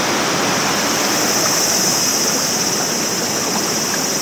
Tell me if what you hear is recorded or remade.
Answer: recorded